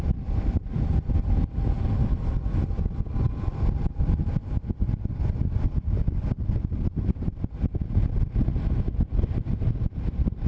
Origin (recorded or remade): recorded